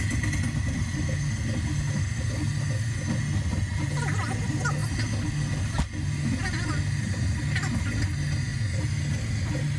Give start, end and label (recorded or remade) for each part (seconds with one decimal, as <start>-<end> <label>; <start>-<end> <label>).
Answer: 0.0-9.8 recorded